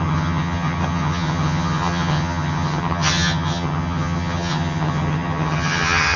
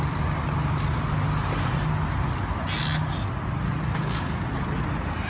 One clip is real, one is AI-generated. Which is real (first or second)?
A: second